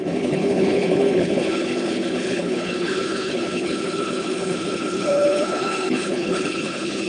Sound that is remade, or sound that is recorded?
remade